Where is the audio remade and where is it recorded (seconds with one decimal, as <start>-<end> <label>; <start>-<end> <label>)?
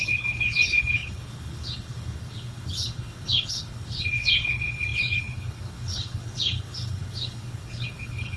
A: 0.0-8.4 remade